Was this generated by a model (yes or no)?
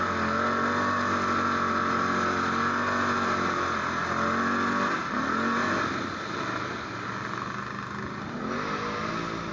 no